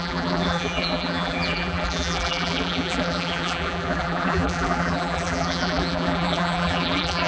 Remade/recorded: remade